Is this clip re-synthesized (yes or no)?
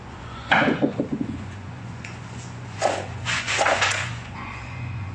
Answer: yes